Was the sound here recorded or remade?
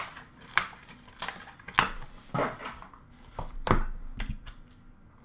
recorded